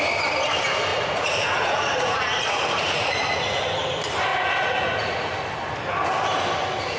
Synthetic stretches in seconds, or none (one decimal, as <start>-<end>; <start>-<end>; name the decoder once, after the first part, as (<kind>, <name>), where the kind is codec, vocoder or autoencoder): 0.9-3.6 (vocoder, Vocos); 4.3-5.3